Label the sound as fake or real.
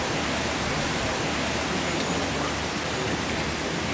real